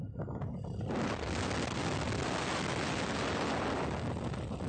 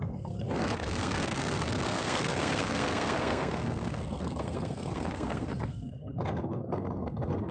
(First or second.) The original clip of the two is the first